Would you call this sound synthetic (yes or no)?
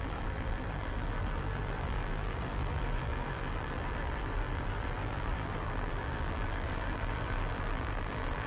yes